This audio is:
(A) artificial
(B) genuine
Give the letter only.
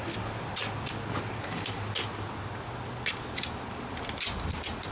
B